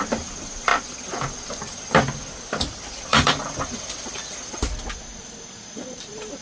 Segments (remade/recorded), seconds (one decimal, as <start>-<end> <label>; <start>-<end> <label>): 0.0-0.7 remade; 0.7-2.7 recorded; 2.7-6.4 remade